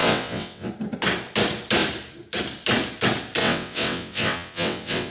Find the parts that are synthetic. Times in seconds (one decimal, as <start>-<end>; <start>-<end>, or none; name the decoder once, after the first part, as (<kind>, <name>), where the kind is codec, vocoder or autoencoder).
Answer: 0.0-0.7 (vocoder, WaveNeXt); 3.4-5.1